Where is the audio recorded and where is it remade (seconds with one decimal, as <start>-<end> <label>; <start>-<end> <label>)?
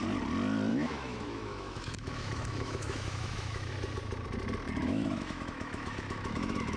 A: 0.0-0.7 recorded; 0.7-3.7 remade; 3.7-4.8 recorded; 4.8-6.8 remade